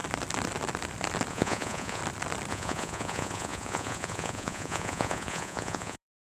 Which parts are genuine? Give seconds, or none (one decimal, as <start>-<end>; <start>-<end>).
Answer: 0.0-1.3; 2.0-2.5